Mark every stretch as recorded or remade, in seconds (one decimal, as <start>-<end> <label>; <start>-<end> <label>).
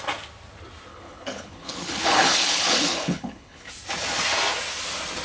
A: 0.0-0.9 recorded; 0.9-3.7 remade; 3.7-5.2 recorded